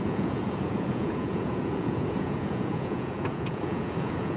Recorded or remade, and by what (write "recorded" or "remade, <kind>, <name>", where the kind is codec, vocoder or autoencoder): remade, vocoder, Vocos